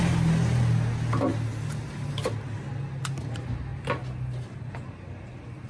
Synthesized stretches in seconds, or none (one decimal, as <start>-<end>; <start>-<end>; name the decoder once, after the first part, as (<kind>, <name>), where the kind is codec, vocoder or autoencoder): none